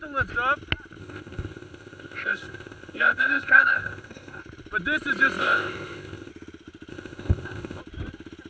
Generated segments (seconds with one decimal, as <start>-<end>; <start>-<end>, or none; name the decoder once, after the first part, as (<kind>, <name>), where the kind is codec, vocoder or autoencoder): 1.0-4.4 (codec, ZipCodec); 5.4-6.3; 6.9-7.8

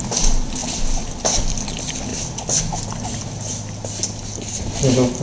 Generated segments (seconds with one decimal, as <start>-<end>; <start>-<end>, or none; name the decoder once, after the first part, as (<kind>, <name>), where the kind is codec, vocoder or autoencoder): none

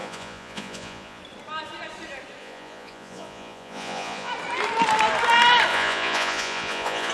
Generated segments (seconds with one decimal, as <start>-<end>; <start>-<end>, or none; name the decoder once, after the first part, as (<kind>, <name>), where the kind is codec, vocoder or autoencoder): 0.0-1.2 (vocoder, Vocos); 2.4-4.3; 5.7-7.1

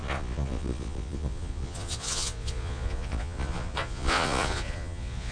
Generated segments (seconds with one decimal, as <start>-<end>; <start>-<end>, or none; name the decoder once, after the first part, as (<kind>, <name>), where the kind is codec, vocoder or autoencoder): 0.0-5.3 (vocoder, Vocos)